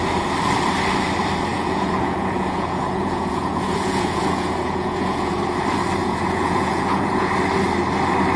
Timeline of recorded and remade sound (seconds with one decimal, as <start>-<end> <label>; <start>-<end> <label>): 0.0-1.5 recorded; 1.5-5.4 remade; 5.4-6.0 recorded; 6.0-7.3 remade; 7.3-8.4 recorded